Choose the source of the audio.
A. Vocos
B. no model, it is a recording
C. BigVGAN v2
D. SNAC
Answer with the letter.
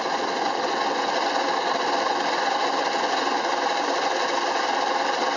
B